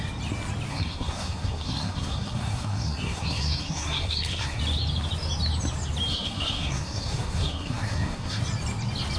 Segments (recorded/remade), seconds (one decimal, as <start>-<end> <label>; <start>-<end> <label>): 0.0-0.7 recorded; 0.7-4.6 remade; 4.6-6.1 recorded; 6.1-8.4 remade; 8.4-9.2 recorded